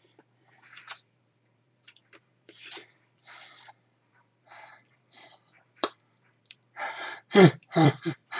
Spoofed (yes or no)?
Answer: yes